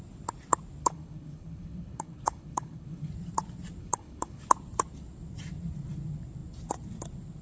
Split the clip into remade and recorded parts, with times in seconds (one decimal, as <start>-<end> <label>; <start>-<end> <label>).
0.0-0.8 recorded; 0.8-3.1 remade; 3.1-3.8 recorded; 3.8-4.4 remade; 4.4-7.4 recorded